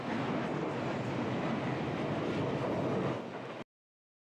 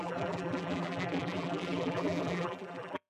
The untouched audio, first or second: first